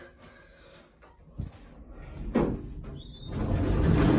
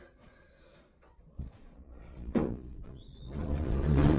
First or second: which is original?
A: first